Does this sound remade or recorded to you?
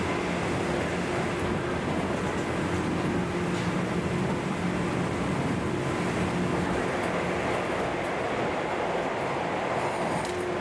recorded